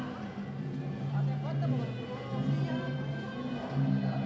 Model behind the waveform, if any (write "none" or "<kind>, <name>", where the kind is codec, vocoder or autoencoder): none